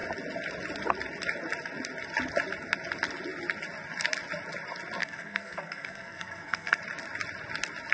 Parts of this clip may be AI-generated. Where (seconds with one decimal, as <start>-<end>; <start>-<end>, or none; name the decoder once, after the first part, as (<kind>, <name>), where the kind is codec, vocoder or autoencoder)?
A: 5.0-6.8 (codec, SNAC)